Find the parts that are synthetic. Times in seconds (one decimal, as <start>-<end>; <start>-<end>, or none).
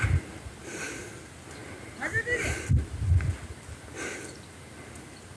none